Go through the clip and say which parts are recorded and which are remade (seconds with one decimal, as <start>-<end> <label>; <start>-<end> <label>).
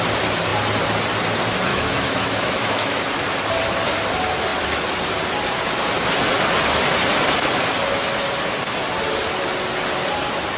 0.0-1.7 recorded; 1.7-3.0 remade; 3.0-10.6 recorded